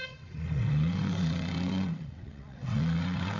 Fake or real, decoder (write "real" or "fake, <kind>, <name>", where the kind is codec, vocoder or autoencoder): fake, vocoder, WaveNeXt